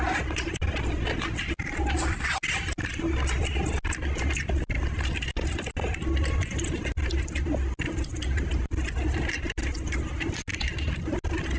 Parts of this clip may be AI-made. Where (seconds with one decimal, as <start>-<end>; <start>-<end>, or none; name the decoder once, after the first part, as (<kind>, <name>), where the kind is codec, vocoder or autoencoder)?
none